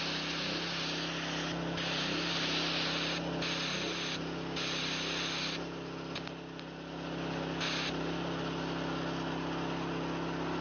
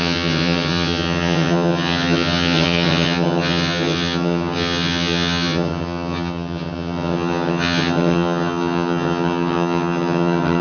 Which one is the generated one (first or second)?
second